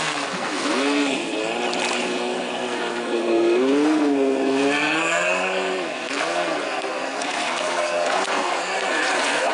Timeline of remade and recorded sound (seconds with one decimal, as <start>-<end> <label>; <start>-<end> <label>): 0.0-1.4 remade; 1.4-2.0 recorded; 2.0-9.5 remade